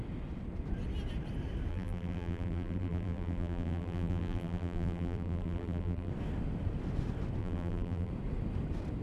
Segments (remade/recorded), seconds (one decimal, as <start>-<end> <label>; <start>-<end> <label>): 0.0-1.7 recorded; 1.7-6.1 remade; 6.1-7.4 recorded; 7.4-8.1 remade; 8.1-9.0 recorded